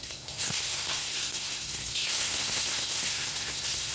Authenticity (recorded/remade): remade